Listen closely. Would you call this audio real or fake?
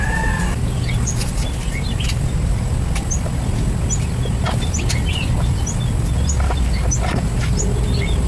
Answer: real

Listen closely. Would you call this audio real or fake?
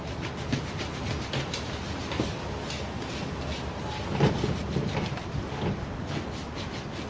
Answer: real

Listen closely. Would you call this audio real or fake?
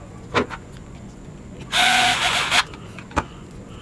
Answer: fake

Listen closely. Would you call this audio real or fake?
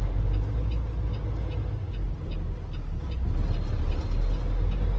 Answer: real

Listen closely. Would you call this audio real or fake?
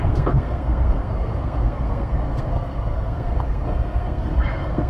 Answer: fake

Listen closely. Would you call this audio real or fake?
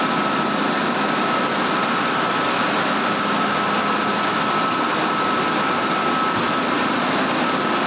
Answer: real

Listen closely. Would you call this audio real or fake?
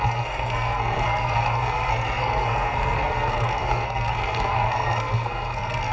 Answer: fake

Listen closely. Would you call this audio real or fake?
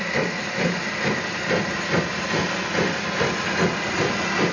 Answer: real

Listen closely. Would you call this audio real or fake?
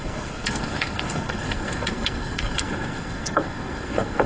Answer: fake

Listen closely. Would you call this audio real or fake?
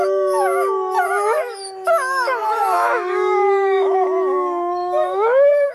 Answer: fake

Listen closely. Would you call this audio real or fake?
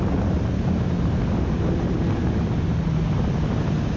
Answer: real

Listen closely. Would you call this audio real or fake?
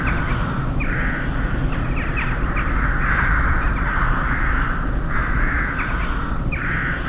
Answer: real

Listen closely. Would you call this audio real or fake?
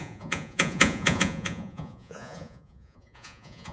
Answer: fake